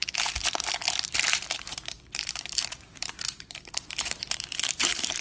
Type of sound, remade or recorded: remade